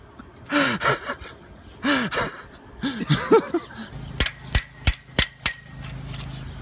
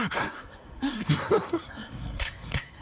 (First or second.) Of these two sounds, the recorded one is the first